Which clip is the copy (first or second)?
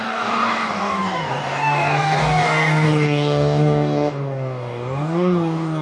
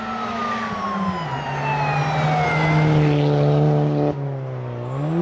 first